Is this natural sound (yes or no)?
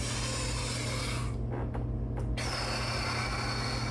yes